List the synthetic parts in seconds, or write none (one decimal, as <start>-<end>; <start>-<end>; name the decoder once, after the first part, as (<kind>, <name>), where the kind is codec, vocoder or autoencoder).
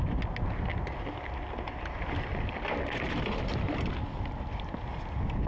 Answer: none